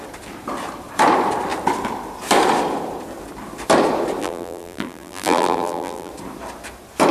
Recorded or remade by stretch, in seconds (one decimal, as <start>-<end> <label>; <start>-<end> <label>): 0.0-4.2 recorded; 4.2-6.1 remade; 6.1-7.1 recorded